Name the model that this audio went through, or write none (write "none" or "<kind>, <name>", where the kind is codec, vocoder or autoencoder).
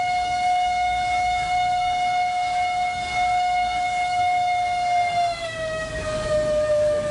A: codec, DAC